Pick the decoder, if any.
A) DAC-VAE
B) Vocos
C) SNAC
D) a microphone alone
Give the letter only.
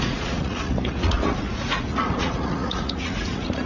B